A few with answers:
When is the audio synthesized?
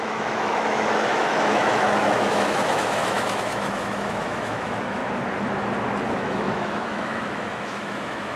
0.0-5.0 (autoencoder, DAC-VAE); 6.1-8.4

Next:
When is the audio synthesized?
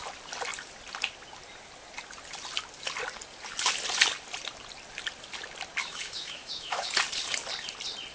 5.8-6.9 (autoencoder, DAC-VAE)